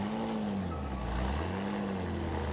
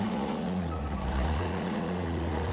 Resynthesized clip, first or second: second